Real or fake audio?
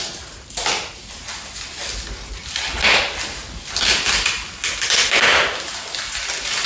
real